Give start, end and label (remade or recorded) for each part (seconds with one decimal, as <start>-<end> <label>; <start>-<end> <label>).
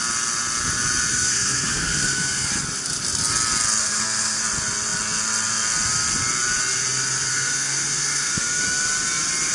0.0-1.1 recorded; 1.1-2.5 remade; 2.5-3.8 recorded; 3.8-4.4 remade; 4.4-7.3 recorded; 7.3-8.6 remade; 8.6-9.5 recorded